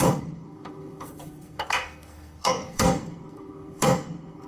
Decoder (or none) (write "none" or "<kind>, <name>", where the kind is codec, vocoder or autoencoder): codec, SNAC